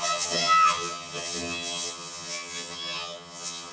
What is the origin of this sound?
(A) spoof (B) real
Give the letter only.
A